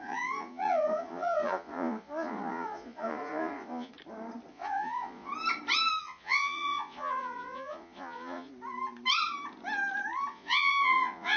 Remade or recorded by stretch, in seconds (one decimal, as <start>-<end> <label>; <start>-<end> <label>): 0.0-3.9 remade; 3.9-4.5 recorded; 4.5-5.3 remade; 5.3-6.0 recorded; 6.0-8.5 remade; 8.5-10.3 recorded; 10.3-11.4 remade